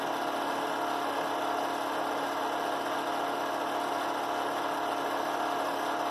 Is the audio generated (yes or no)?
no